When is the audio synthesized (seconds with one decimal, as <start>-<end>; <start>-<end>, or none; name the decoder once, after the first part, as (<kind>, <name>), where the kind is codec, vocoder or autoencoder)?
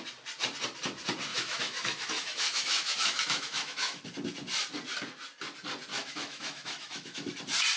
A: 1.3-4.0 (autoencoder, DAC-VAE); 5.9-7.3